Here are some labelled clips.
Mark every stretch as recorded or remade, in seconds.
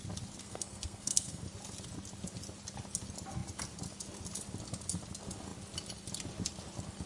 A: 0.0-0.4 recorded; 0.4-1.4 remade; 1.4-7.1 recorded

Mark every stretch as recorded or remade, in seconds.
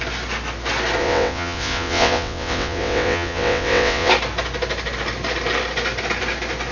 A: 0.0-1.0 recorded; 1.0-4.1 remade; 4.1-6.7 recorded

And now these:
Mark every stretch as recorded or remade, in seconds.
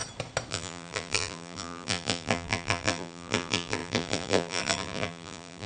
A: 0.0-0.5 recorded; 0.5-5.7 remade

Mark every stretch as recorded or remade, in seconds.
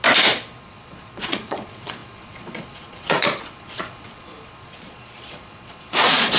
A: 0.0-0.6 recorded; 0.6-6.4 remade